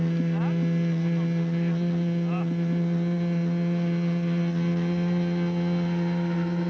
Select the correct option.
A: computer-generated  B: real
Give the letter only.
B